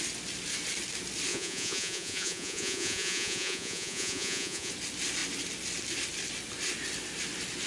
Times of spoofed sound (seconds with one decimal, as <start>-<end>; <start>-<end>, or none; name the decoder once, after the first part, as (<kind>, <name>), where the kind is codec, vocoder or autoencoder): 1.3-4.7 (vocoder, Vocos)